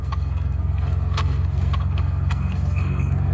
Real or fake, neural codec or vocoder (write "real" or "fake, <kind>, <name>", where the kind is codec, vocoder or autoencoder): fake, codec, SNAC